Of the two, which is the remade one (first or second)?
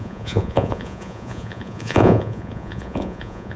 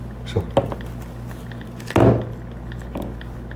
first